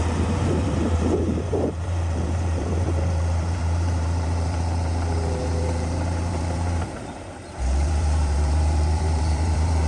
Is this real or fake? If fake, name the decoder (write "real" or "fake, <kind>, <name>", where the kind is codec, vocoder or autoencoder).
fake, vocoder, BigVGAN v2